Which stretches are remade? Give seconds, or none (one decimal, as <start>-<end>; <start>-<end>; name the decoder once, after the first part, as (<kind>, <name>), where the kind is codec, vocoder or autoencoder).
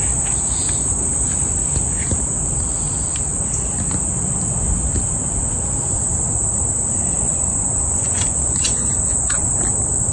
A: 7.3-9.5 (vocoder, Vocos)